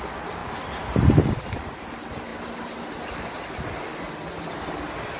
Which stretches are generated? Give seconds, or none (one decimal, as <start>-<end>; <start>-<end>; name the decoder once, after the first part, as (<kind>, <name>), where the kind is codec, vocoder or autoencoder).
none